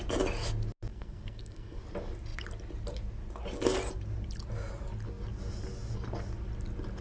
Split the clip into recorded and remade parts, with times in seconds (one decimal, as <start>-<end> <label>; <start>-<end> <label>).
0.0-0.9 recorded; 0.9-1.8 remade; 1.8-7.0 recorded